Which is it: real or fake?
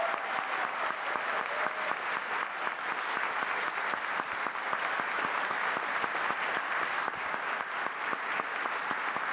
real